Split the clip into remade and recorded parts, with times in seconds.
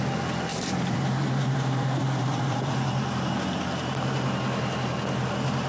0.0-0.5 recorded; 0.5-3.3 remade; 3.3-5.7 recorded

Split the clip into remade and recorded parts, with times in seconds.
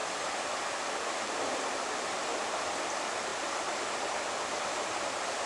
0.0-5.5 recorded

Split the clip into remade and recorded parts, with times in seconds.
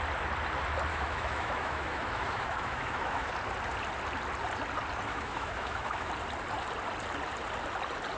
0.0-0.9 recorded; 0.9-3.3 remade; 3.3-5.1 recorded; 5.1-6.1 remade; 6.1-8.2 recorded